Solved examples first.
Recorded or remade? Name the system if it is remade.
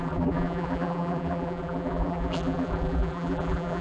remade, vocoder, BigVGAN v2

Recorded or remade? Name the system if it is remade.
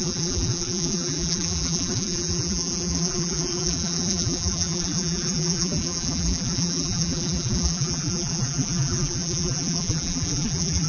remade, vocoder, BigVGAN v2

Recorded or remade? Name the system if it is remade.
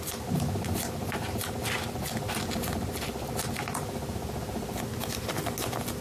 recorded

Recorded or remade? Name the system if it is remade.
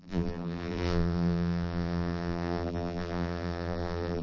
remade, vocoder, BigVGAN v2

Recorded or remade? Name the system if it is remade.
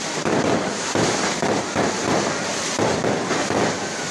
remade, vocoder, BigVGAN v2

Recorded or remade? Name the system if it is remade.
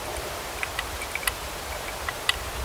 recorded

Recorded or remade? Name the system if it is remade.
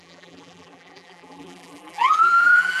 remade, vocoder, BigVGAN v2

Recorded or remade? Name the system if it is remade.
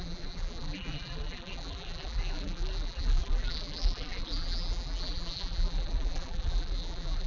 remade, vocoder, BigVGAN v2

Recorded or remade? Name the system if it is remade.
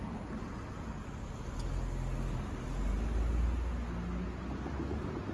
recorded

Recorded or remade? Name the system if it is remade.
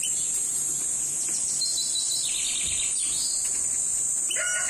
recorded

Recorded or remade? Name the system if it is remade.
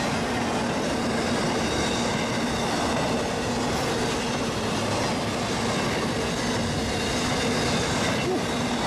recorded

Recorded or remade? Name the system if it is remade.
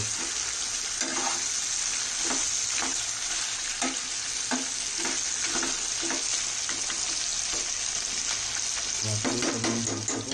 recorded